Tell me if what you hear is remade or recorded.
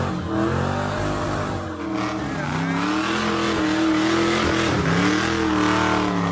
recorded